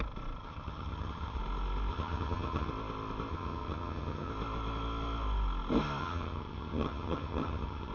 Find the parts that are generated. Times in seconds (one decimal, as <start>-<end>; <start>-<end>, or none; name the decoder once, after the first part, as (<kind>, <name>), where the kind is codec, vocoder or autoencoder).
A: 0.4-1.4 (vocoder, HiFi-GAN); 1.9-2.7; 3.3-4.3; 6.0-7.9